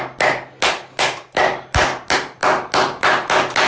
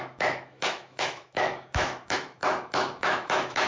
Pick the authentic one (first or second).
first